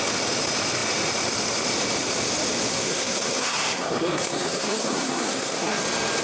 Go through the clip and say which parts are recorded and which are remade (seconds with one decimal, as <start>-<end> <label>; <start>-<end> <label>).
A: 0.0-2.7 recorded; 2.7-5.8 remade; 5.8-6.2 recorded

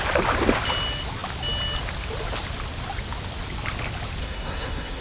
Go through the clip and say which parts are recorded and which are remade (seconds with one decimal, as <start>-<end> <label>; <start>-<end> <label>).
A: 0.0-4.2 recorded; 4.2-5.0 remade

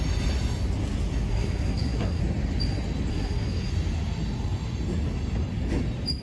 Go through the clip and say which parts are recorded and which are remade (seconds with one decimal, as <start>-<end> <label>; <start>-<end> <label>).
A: 0.0-1.3 recorded; 1.3-2.2 remade; 2.2-3.1 recorded; 3.1-3.7 remade; 3.7-6.2 recorded

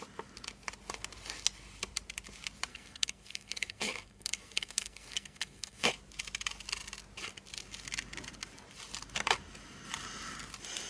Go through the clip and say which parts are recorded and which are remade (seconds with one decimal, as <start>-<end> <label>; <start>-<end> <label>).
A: 0.0-2.7 recorded; 2.7-5.9 remade; 5.9-10.9 recorded

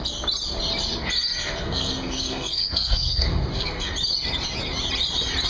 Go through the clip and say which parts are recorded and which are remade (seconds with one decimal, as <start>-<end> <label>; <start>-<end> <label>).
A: 0.0-1.6 recorded; 1.6-3.9 remade; 3.9-5.5 recorded